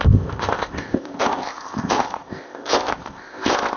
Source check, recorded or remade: remade